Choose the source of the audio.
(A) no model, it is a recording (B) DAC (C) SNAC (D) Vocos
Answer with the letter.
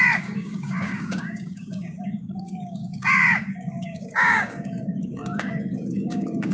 B